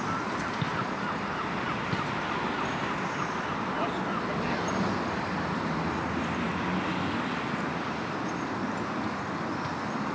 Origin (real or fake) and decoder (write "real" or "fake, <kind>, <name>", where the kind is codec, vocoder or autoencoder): real